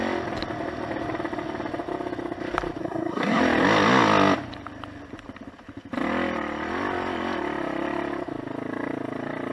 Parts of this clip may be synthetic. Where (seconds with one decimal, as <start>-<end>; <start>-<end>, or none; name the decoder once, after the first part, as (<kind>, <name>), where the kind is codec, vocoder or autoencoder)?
2.8-3.4 (codec, SNAC)